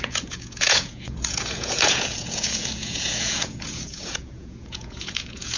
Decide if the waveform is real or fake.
fake